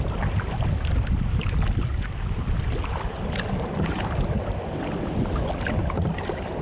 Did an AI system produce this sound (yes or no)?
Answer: no